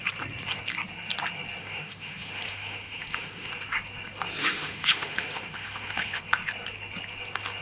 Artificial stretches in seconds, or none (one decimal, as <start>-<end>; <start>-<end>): 1.6-3.5; 4.4-6.2